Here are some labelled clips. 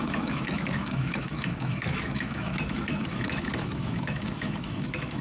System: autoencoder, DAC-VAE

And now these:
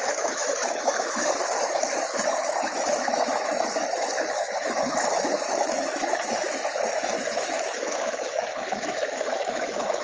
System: autoencoder, DAC-VAE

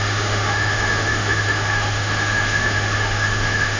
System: autoencoder, DAC-VAE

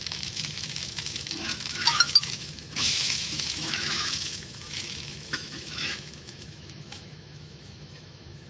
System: autoencoder, DAC-VAE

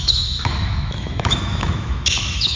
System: autoencoder, DAC-VAE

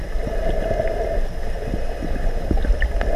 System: none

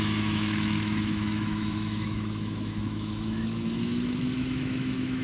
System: autoencoder, DAC-VAE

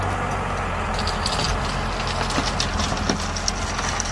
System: none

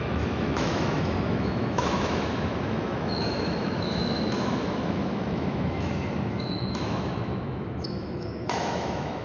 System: autoencoder, DAC-VAE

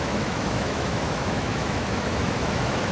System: autoencoder, DAC-VAE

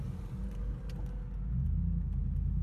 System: none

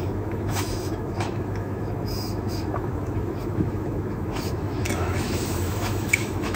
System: autoencoder, DAC-VAE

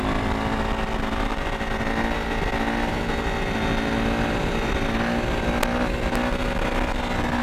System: none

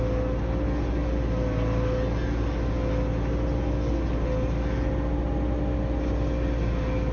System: none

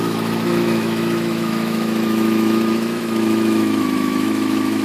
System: autoencoder, DAC-VAE